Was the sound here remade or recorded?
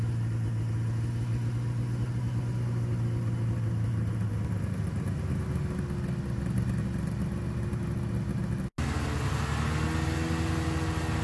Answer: recorded